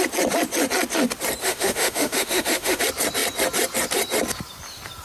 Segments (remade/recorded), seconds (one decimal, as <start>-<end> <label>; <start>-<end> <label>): 0.0-1.4 recorded; 1.4-2.8 remade; 2.8-5.0 recorded